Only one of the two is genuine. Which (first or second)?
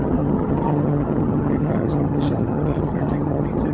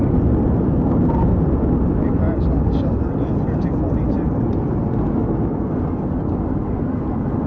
second